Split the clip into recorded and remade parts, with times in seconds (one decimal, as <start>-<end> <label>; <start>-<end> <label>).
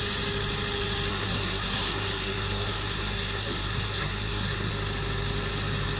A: 0.0-1.1 recorded; 1.1-4.7 remade; 4.7-6.0 recorded